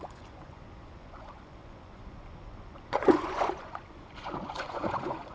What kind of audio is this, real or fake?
fake